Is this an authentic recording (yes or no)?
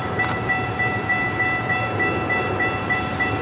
no